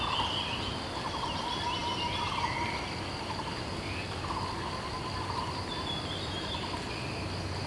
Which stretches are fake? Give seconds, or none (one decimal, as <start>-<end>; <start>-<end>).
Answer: none